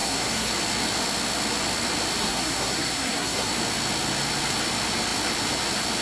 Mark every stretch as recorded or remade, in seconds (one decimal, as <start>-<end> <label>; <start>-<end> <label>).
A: 0.0-0.5 remade; 0.5-2.2 recorded; 2.2-3.5 remade; 3.5-6.0 recorded